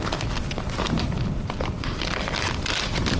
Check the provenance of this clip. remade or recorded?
recorded